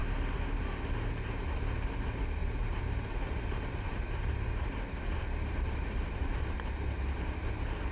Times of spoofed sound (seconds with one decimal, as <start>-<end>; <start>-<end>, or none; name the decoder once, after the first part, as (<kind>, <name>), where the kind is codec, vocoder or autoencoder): 2.4-7.0 (vocoder, BigVGAN v2)